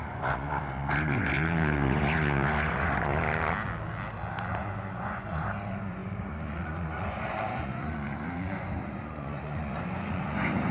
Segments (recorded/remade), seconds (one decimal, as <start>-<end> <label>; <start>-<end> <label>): 0.0-3.1 remade; 3.1-4.5 recorded; 4.5-10.7 remade